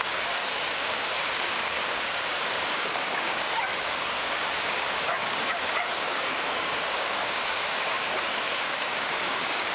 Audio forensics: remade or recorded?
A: remade